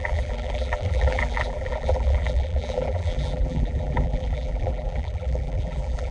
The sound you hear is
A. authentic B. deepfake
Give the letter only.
B